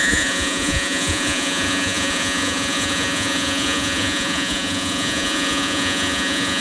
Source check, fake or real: fake